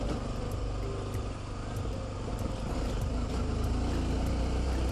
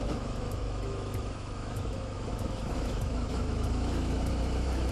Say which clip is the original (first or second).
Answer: first